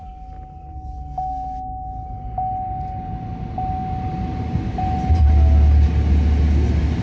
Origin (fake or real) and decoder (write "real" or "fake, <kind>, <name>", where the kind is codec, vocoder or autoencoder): real